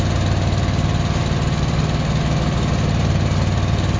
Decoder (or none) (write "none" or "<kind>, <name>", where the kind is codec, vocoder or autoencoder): none